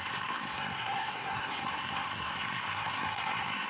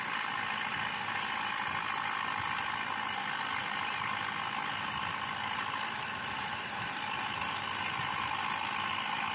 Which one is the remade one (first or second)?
first